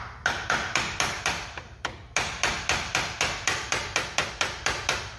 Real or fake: real